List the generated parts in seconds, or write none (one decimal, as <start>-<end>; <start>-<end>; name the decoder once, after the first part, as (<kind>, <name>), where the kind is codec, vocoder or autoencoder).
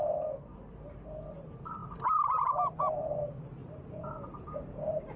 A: 1.8-2.4 (vocoder, BigVGAN v2); 3.6-4.1